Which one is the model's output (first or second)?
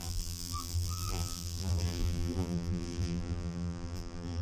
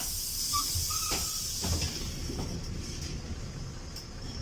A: first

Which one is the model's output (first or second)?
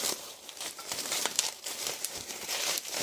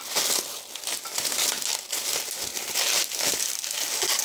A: first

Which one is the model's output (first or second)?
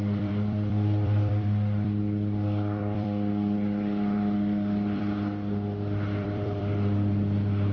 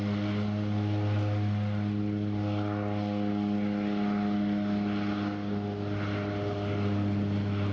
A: first